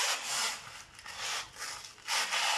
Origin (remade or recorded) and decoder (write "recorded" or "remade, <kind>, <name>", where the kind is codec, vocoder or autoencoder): recorded